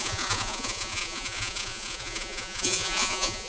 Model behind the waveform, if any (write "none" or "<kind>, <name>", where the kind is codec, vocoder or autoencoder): vocoder, Vocos